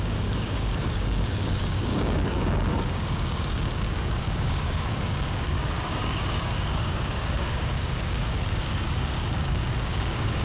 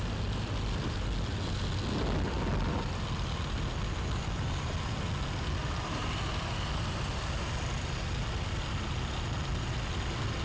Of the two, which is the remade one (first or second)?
first